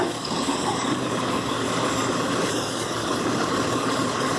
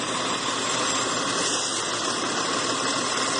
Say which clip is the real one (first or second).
second